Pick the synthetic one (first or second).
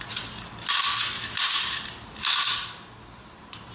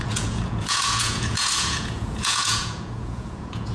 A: second